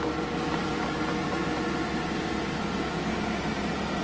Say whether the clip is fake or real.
real